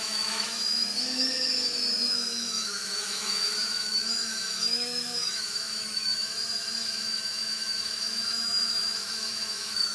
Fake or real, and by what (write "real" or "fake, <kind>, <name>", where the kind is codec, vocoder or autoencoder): fake, autoencoder, DAC-VAE